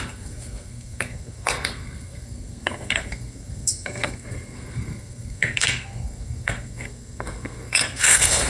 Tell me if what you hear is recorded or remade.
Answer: remade